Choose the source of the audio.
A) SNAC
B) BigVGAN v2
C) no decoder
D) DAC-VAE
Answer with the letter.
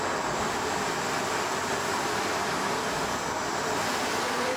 B